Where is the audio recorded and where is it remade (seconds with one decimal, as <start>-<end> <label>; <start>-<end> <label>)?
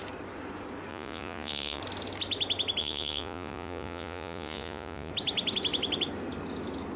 0.0-0.9 recorded; 0.9-1.8 remade; 1.8-2.8 recorded; 2.8-5.1 remade; 5.1-7.0 recorded